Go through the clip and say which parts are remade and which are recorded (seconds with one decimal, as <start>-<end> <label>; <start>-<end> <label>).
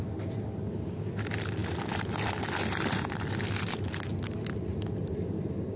0.0-5.8 recorded